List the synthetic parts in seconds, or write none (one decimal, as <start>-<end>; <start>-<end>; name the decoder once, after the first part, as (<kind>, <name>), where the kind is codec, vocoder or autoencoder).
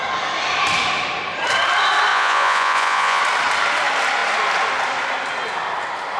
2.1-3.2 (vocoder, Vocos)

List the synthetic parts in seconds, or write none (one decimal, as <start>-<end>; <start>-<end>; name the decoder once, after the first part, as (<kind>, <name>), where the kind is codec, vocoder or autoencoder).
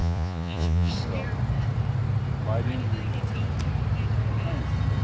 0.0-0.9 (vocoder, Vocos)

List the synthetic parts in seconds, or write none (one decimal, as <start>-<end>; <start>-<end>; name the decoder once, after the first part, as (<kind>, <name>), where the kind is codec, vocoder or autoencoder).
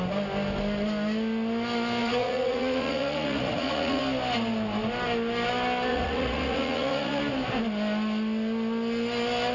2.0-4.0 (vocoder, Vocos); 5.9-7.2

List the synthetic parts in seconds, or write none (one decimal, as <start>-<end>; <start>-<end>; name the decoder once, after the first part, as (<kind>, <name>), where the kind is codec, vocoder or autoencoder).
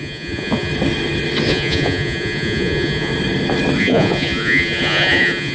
0.0-0.7 (vocoder, Vocos); 1.5-3.1; 3.8-5.5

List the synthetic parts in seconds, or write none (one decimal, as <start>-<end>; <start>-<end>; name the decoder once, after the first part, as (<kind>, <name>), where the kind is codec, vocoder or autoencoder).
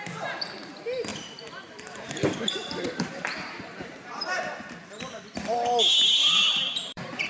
1.1-4.4 (vocoder, BigVGAN v2); 6.2-7.3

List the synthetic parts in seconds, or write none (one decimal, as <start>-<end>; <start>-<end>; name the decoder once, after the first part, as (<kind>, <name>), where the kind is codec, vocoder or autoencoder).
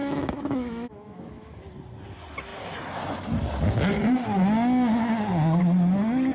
0.0-1.6 (autoencoder, DAC-VAE)